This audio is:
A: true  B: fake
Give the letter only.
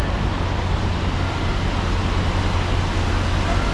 A